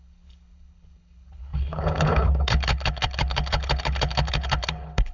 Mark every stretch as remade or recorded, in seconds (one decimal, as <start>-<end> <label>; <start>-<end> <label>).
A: 0.0-5.1 remade